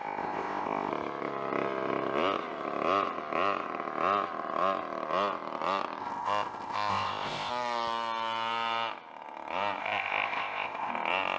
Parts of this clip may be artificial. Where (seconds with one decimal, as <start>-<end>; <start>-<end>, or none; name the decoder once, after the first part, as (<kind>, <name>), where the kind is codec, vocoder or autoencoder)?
0.0-0.9 (codec, ZipCodec); 6.0-7.5; 9.8-10.9